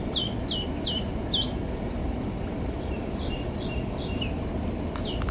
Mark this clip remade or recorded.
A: recorded